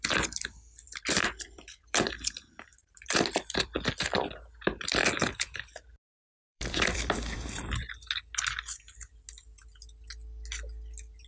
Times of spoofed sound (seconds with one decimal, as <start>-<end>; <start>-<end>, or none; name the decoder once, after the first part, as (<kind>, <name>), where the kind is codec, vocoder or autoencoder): 1.2-3.9 (vocoder, BigVGAN v2); 5.0-7.9